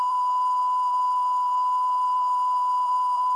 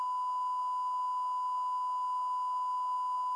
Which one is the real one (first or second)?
second